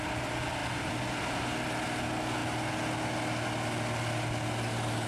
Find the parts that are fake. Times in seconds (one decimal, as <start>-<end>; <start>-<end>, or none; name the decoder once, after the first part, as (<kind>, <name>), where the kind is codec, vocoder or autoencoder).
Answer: none